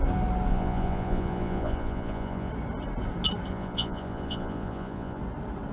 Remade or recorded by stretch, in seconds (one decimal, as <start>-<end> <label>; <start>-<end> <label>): 0.0-0.5 recorded; 0.5-2.5 remade; 2.5-3.5 recorded; 3.5-5.2 remade; 5.2-5.7 recorded